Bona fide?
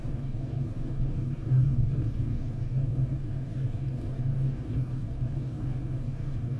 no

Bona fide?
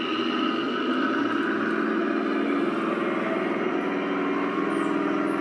yes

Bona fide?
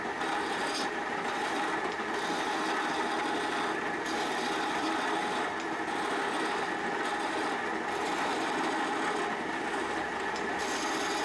yes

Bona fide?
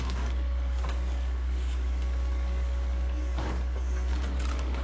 no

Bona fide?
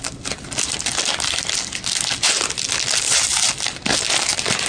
yes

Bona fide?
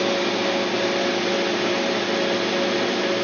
yes